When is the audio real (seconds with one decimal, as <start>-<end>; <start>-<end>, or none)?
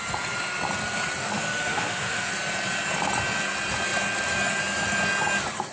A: 0.0-1.2; 2.3-5.7